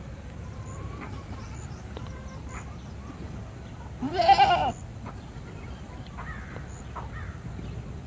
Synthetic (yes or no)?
no